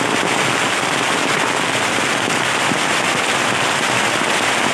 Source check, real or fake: real